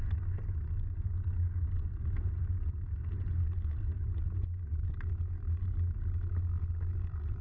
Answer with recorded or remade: recorded